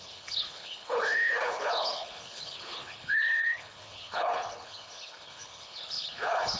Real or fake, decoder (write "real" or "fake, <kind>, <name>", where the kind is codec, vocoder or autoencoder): fake, codec, HILCodec